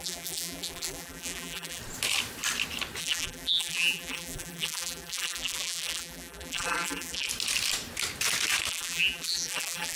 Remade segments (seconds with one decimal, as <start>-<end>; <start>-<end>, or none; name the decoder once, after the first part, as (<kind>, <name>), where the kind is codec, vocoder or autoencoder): 0.0-1.8 (vocoder, BigVGAN v2); 3.0-7.3; 8.7-10.0